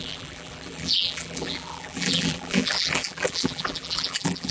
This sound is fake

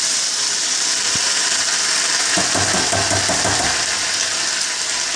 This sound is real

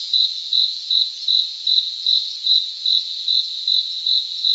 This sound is fake